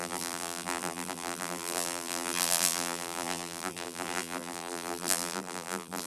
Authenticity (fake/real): fake